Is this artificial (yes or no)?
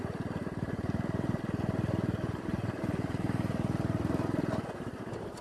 yes